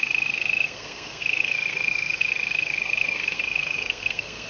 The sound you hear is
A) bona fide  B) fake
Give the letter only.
B